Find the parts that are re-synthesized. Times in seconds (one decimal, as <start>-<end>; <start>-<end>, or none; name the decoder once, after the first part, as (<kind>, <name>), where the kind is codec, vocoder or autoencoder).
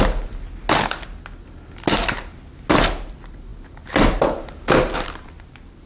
none